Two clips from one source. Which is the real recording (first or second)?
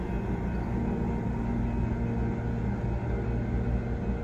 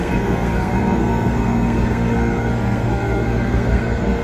first